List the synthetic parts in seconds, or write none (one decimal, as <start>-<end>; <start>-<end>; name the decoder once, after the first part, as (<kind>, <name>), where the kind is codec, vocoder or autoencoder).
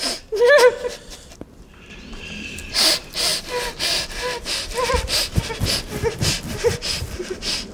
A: none